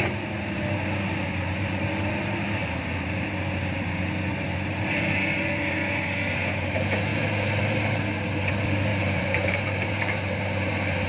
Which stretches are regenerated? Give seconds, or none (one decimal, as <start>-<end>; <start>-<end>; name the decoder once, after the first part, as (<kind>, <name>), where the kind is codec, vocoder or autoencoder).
2.6-4.0 (vocoder, BigVGAN v2); 8.9-10.7